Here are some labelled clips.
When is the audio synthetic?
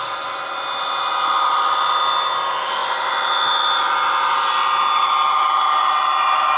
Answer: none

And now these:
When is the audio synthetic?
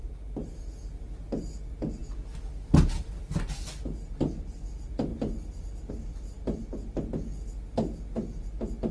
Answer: none